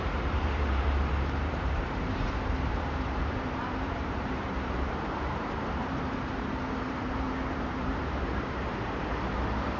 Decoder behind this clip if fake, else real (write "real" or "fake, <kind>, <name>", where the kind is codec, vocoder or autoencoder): fake, vocoder, BigVGAN v2